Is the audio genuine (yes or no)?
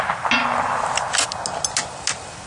yes